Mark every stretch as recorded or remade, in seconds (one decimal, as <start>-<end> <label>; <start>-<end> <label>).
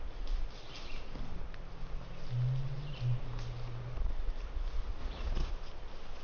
0.0-5.0 recorded; 5.0-5.5 remade; 5.5-6.2 recorded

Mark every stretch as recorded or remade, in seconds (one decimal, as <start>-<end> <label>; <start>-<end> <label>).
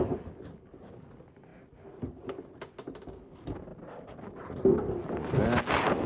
0.0-6.1 recorded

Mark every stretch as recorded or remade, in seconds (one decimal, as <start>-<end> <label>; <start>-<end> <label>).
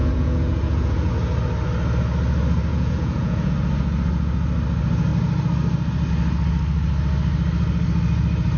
0.0-1.1 remade; 1.1-2.7 recorded; 2.7-3.5 remade; 3.5-8.6 recorded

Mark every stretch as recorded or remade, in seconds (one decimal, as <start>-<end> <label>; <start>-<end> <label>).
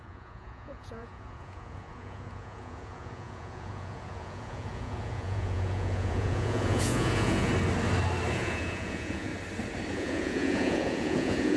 0.0-7.5 remade; 7.5-8.3 recorded; 8.3-9.3 remade; 9.3-9.9 recorded; 9.9-11.6 remade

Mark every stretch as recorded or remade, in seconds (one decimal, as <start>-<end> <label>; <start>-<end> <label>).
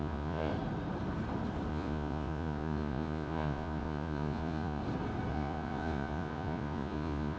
0.0-0.5 remade; 0.5-1.7 recorded; 1.7-4.8 remade; 4.8-5.3 recorded; 5.3-7.4 remade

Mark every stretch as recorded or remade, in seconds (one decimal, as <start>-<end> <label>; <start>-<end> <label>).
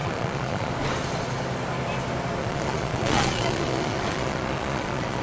0.0-0.7 remade; 0.7-2.4 recorded; 2.4-5.2 remade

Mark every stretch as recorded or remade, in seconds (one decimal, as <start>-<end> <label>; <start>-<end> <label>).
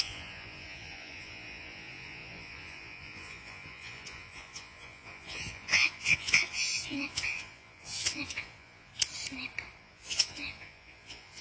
0.0-8.9 remade; 8.9-9.8 recorded; 9.8-11.4 remade